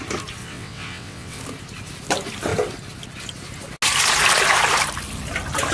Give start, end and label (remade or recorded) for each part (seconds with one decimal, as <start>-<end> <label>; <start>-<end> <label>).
0.0-0.4 recorded; 0.4-1.4 remade; 1.4-5.7 recorded